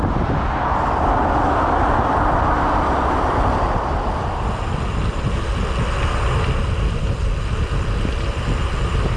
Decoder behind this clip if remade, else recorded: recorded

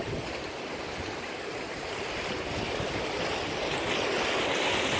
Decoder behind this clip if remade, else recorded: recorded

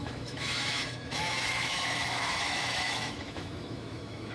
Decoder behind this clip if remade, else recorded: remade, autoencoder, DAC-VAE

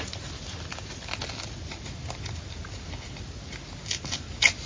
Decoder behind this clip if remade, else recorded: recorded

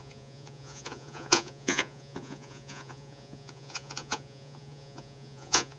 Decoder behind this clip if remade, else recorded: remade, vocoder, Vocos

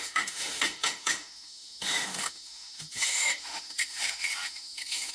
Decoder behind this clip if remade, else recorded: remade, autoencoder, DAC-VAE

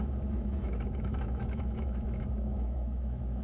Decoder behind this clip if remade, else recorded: remade, autoencoder, DAC-VAE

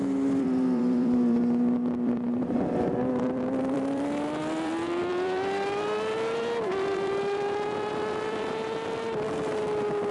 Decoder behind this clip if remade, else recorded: remade, vocoder, BigVGAN v2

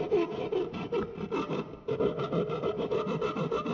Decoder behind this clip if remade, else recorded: recorded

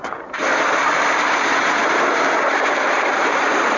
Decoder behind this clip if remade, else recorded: remade, vocoder, BigVGAN v2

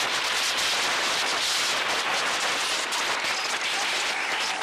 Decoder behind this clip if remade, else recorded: recorded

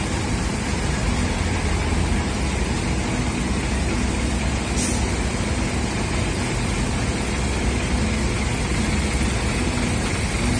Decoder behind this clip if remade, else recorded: recorded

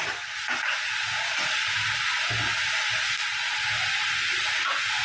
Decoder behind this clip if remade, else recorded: recorded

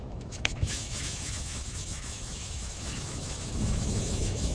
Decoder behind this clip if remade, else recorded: remade, autoencoder, DAC-VAE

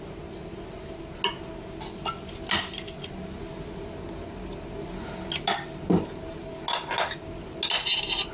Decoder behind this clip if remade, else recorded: recorded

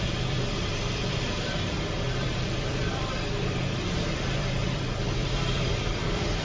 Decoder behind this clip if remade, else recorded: remade, vocoder, BigVGAN v2